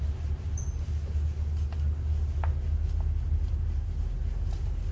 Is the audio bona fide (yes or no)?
yes